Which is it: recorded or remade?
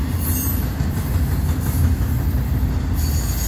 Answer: recorded